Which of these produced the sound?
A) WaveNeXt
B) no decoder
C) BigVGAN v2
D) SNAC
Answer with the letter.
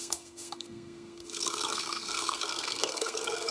D